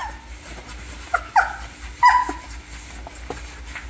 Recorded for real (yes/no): yes